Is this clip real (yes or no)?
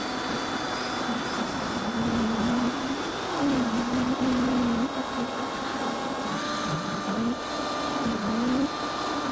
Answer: yes